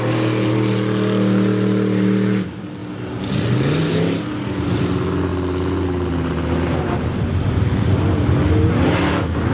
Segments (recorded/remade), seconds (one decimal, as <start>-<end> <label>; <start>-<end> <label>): 0.0-9.5 recorded